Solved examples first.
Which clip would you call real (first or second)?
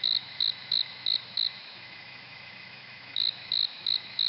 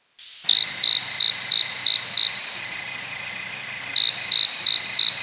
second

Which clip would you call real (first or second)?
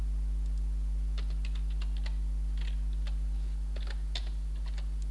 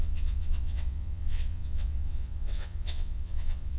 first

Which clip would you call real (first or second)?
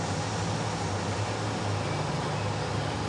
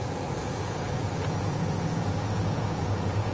first